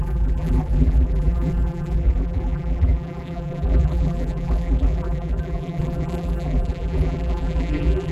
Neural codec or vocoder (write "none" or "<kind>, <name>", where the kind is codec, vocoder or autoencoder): vocoder, BigVGAN v2